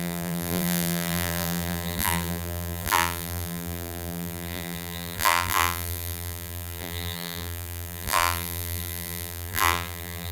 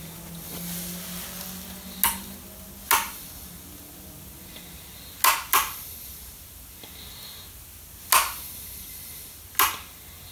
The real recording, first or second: second